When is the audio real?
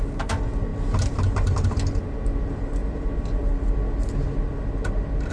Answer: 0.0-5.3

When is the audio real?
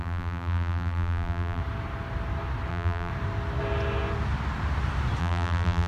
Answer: 1.6-2.7; 3.1-5.2